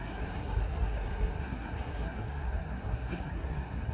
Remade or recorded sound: remade